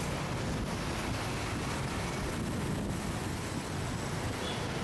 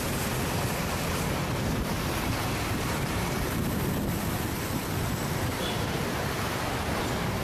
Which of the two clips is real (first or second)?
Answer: first